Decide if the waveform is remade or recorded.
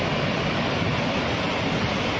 recorded